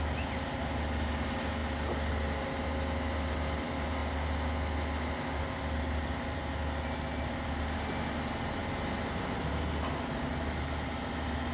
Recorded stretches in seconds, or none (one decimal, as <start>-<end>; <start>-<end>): 0.0-11.5